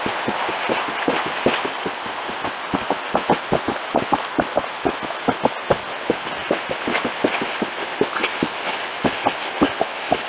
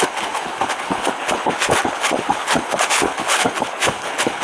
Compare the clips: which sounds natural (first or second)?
first